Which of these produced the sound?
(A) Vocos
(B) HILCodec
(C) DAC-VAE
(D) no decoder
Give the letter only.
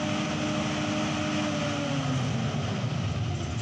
D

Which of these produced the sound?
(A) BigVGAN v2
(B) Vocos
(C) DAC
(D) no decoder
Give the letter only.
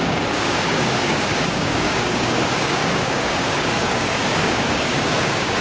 C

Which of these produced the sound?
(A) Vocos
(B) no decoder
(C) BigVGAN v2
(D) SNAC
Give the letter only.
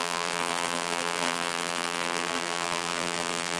C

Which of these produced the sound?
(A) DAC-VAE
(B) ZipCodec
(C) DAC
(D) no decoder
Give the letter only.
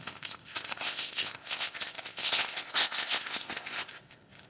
B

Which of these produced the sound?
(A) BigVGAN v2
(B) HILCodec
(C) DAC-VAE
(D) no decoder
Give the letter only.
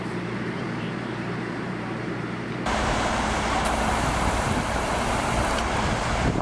A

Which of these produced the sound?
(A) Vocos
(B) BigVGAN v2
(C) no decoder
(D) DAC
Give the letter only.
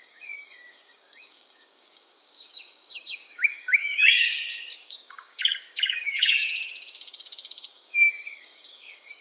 D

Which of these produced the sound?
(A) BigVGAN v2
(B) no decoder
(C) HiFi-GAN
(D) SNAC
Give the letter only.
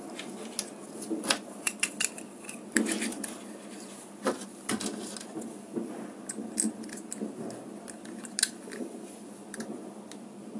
B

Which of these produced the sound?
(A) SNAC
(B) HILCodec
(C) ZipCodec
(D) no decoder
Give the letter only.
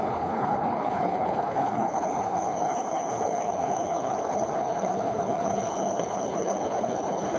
B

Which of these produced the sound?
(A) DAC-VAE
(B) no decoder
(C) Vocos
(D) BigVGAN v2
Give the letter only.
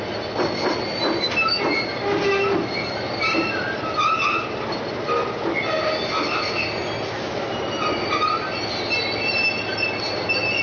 B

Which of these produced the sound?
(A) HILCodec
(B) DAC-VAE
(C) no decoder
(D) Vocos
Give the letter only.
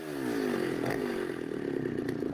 C